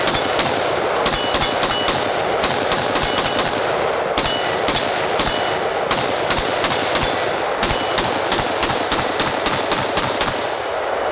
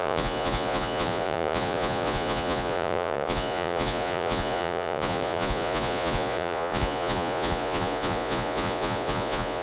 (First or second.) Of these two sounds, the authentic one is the first